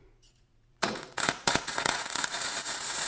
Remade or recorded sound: remade